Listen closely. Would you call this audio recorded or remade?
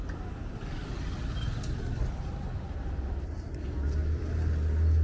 recorded